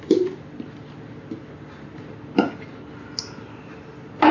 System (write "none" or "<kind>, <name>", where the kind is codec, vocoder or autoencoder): none